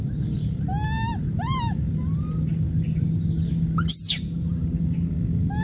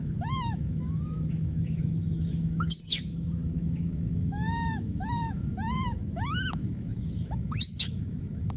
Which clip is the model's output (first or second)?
second